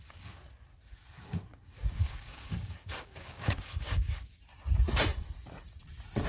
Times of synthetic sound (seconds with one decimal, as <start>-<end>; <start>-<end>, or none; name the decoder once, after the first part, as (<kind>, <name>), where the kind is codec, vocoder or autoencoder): 2.0-4.4 (codec, DAC)

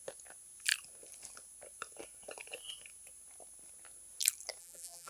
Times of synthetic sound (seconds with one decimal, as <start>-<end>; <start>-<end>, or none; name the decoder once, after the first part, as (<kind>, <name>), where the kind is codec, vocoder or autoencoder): 4.6-5.1 (vocoder, BigVGAN v2)

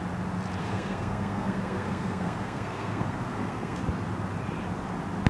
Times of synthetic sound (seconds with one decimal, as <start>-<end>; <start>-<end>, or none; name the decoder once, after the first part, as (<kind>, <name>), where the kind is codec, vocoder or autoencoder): 0.6-3.8 (codec, SNAC)

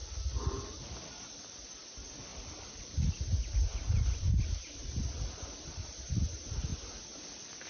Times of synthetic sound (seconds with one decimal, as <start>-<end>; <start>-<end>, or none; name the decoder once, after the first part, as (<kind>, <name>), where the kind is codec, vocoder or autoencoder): 2.3-6.1 (vocoder, BigVGAN v2); 6.7-7.7

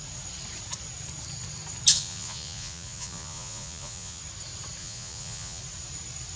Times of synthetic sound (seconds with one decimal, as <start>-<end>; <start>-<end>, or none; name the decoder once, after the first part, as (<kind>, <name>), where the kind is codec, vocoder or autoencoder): 1.9-4.2 (vocoder, Vocos); 4.8-5.6

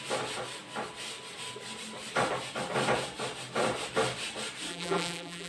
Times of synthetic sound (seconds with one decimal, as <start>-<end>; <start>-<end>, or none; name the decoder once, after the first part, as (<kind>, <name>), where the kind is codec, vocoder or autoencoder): 4.7-5.5 (vocoder, BigVGAN v2)

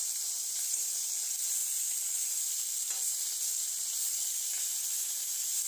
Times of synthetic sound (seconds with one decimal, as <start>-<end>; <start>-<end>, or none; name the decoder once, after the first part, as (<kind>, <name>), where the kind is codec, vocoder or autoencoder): none